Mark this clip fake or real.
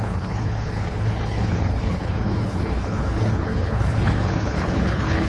fake